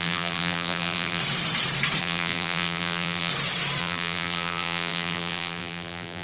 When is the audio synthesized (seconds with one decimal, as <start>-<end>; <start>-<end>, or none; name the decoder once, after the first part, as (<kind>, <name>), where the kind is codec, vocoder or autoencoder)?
0.0-1.2 (vocoder, BigVGAN v2); 2.0-3.3; 3.8-6.2

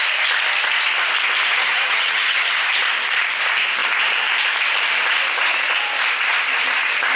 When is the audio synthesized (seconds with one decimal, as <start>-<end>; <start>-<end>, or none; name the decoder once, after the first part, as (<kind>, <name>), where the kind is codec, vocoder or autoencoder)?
1.6-2.5 (vocoder, HiFi-GAN)

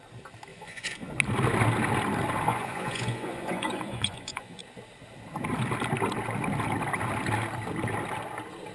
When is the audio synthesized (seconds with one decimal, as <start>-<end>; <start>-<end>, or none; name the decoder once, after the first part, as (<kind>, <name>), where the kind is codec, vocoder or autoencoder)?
0.5-1.1 (vocoder, Vocos); 2.5-4.6

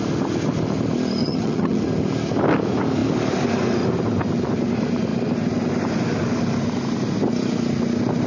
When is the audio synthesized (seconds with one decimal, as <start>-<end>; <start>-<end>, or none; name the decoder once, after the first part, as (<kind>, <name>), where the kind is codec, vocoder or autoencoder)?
1.2-1.8 (vocoder, HiFi-GAN)